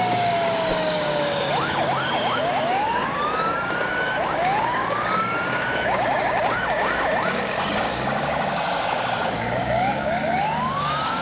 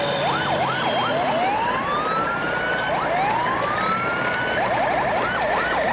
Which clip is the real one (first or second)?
second